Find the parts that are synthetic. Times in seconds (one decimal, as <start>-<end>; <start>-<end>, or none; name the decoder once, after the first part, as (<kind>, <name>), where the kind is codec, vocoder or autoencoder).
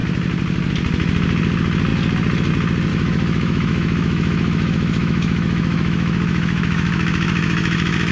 2.9-8.1 (autoencoder, DAC-VAE)